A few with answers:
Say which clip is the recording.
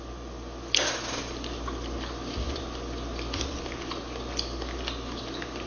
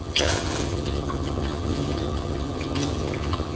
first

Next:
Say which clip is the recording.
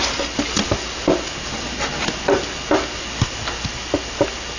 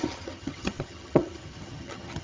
first